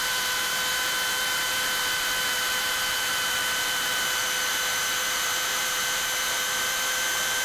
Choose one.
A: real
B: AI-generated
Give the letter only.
B